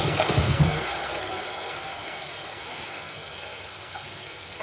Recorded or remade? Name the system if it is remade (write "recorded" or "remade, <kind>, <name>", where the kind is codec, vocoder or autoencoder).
remade, codec, SNAC